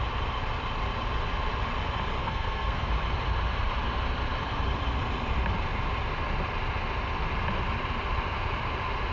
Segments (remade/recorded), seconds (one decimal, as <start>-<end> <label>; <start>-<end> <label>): 0.0-2.2 recorded; 2.2-2.9 remade; 2.9-9.1 recorded